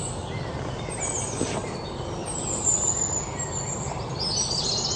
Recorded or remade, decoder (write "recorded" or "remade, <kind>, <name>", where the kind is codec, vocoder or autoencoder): recorded